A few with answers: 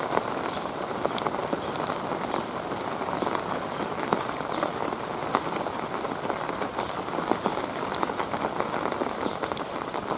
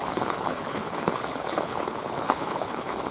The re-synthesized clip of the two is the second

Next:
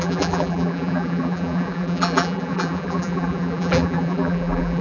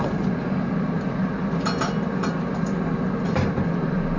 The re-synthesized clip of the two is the first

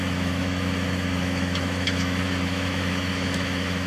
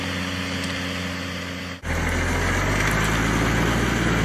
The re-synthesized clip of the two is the first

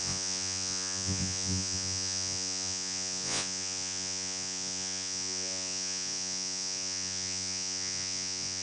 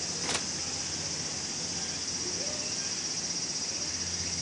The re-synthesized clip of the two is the first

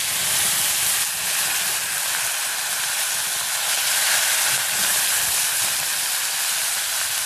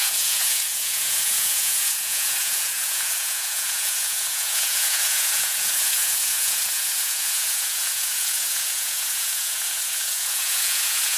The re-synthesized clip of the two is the second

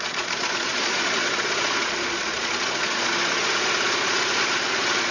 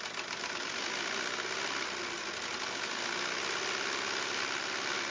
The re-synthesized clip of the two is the first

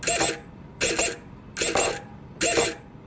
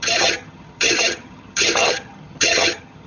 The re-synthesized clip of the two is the second